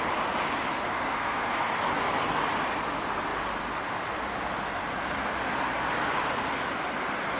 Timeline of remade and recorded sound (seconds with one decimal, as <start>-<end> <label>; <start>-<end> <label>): 0.0-1.1 recorded; 1.1-1.7 remade; 1.7-7.4 recorded